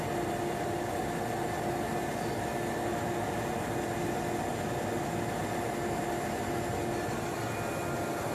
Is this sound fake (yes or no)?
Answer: no